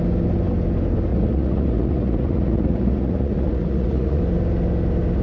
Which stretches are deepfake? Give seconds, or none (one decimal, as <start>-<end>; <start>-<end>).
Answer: 1.1-4.2